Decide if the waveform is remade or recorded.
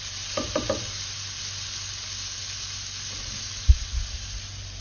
recorded